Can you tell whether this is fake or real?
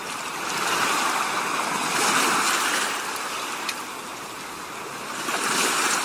real